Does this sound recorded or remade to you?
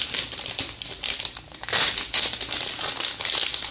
recorded